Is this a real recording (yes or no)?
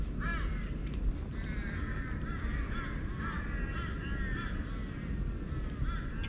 yes